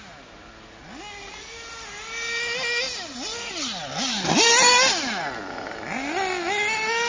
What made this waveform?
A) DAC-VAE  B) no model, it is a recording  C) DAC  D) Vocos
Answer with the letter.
B